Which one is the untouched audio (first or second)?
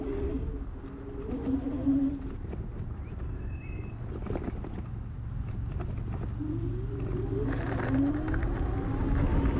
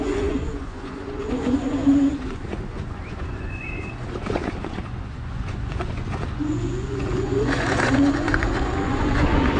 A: first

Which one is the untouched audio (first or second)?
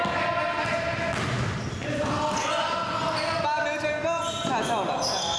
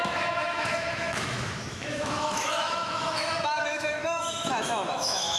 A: first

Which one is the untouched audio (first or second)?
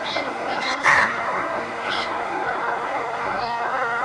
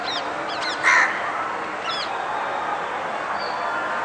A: second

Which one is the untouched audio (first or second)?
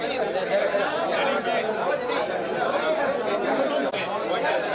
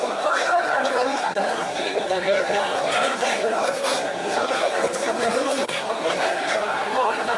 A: first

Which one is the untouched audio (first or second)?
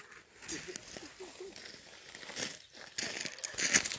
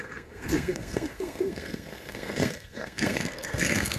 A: first